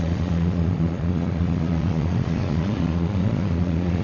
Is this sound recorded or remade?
remade